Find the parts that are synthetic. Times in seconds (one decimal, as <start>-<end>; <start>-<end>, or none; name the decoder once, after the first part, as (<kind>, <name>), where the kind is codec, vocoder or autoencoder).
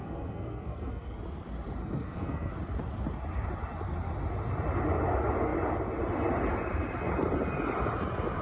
0.0-1.2 (codec, SNAC); 1.8-2.5